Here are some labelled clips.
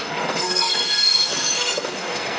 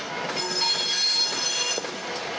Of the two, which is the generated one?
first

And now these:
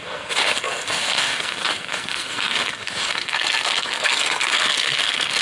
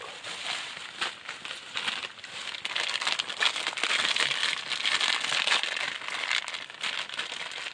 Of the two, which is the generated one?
first